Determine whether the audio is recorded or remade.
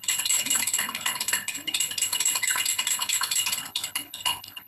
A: remade